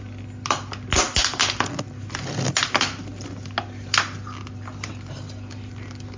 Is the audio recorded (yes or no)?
yes